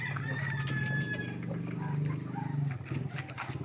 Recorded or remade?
recorded